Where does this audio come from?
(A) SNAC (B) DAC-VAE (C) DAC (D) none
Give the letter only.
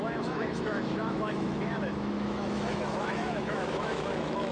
B